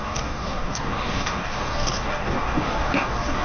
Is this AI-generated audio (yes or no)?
yes